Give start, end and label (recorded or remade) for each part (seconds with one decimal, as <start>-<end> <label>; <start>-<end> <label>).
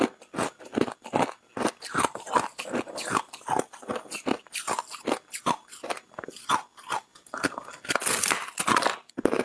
0.0-9.4 recorded